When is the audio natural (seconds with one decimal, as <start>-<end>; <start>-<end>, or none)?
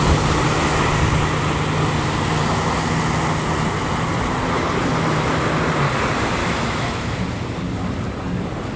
0.0-6.4; 7.2-8.8